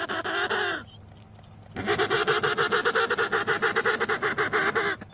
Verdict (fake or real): real